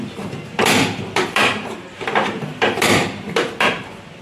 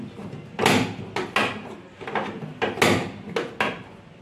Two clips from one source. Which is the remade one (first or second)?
first